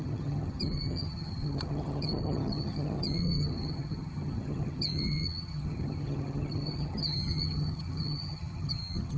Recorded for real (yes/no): no